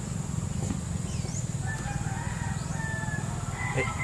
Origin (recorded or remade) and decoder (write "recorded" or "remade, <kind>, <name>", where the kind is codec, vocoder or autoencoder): recorded